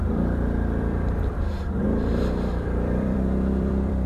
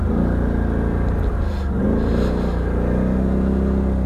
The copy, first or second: first